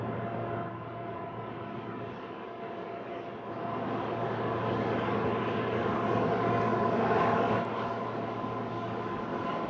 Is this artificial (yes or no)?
yes